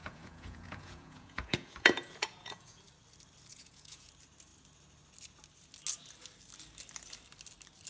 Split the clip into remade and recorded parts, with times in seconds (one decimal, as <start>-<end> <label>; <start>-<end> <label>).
0.0-2.8 remade; 2.8-3.5 recorded; 3.5-4.1 remade; 4.1-7.9 recorded